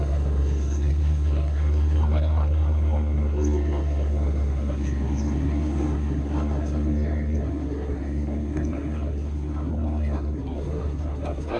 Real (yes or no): no